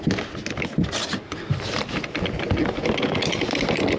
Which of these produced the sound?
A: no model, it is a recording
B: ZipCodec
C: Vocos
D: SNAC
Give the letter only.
A